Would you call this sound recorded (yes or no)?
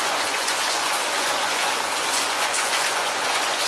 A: no